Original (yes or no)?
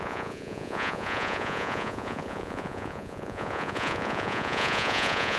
no